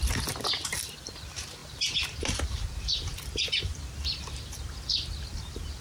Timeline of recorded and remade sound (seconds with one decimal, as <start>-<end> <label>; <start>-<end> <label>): 0.0-5.8 recorded